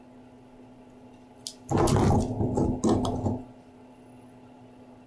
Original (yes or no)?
yes